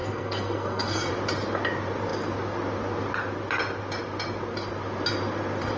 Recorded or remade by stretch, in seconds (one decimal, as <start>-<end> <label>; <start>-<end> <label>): 0.0-1.1 remade; 1.1-5.8 recorded